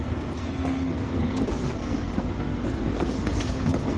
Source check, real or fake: fake